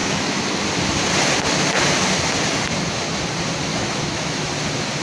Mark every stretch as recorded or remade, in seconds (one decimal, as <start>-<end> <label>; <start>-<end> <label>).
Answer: 0.0-0.6 remade; 0.6-3.7 recorded; 3.7-4.5 remade; 4.5-5.0 recorded